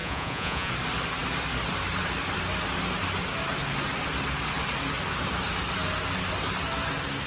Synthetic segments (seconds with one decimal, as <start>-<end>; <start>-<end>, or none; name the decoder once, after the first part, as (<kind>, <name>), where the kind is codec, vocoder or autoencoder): 0.0-0.7 (vocoder, Vocos)